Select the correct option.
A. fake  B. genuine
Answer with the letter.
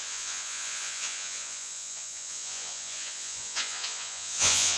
A